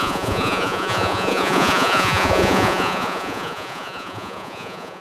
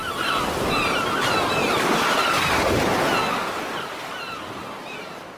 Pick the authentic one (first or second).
second